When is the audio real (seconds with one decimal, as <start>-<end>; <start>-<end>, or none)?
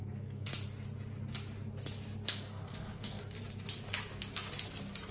0.5-2.3; 3.2-5.1